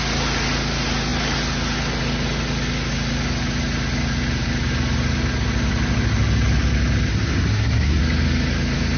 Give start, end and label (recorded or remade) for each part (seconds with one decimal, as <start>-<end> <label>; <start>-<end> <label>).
0.0-7.1 recorded; 7.1-8.0 remade; 8.0-9.0 recorded

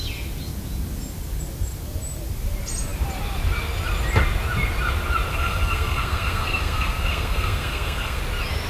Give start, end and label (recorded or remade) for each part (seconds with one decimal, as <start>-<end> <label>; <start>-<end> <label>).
0.0-5.3 recorded; 5.3-8.2 remade; 8.2-8.7 recorded

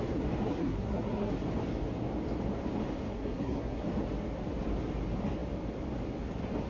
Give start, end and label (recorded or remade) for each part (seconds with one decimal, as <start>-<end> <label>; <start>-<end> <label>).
0.0-0.5 recorded; 0.5-1.3 remade; 1.3-3.1 recorded; 3.1-3.8 remade; 3.8-6.7 recorded

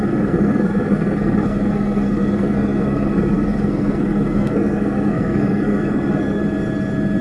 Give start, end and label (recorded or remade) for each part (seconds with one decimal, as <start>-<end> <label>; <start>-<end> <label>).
0.0-6.4 remade; 6.4-7.2 recorded

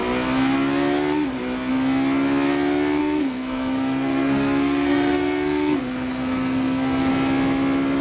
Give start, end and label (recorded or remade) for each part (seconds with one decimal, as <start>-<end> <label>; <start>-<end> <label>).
0.0-3.0 recorded; 3.0-7.1 remade; 7.1-8.0 recorded

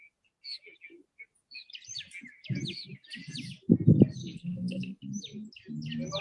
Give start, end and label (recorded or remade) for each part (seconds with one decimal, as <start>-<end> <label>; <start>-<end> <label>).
0.0-4.2 recorded; 4.2-5.0 remade; 5.0-6.2 recorded